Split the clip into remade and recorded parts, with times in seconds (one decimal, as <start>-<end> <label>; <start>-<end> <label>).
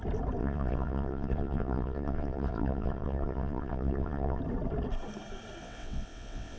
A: 0.0-0.4 recorded; 0.4-4.4 remade; 4.4-5.6 recorded; 5.6-6.6 remade